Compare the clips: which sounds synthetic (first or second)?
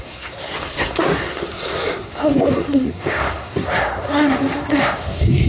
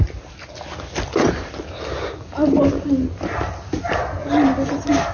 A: first